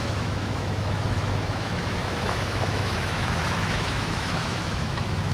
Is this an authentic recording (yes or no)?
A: no